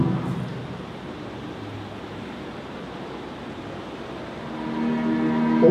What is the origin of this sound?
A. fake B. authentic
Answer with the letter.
B